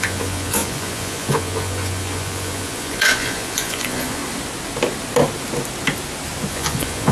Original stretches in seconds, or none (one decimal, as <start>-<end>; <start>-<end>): 4.2-6.5